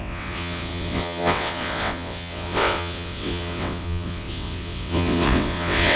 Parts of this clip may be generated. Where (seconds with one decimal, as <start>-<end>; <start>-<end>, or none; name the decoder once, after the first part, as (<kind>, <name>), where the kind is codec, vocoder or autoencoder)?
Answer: 0.0-6.0 (vocoder, WaveNeXt)